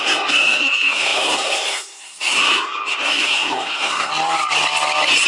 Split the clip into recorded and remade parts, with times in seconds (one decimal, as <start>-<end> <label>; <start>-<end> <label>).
0.0-4.1 remade; 4.1-5.3 recorded